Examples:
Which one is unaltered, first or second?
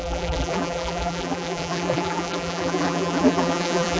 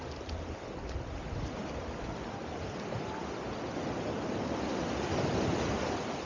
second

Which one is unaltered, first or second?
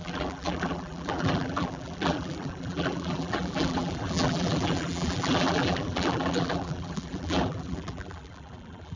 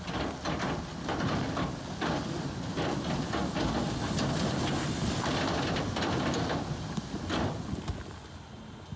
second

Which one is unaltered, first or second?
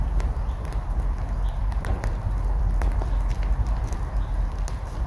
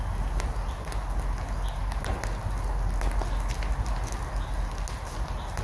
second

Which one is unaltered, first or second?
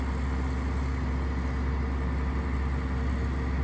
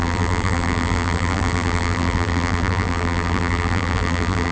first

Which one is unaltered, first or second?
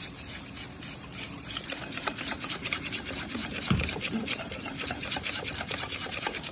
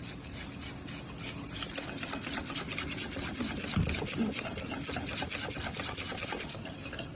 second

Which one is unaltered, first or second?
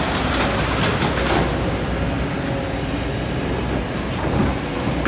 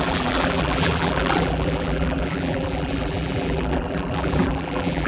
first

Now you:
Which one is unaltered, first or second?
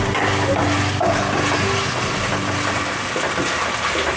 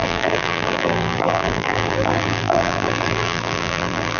first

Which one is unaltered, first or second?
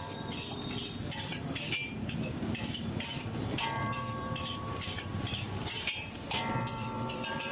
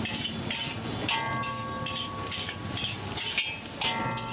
second